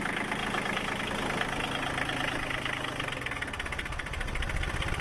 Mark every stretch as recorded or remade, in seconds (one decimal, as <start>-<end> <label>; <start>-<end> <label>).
0.0-5.0 recorded